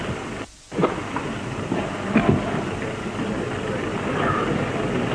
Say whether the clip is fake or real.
real